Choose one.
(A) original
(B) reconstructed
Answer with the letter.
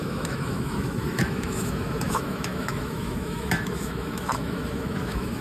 B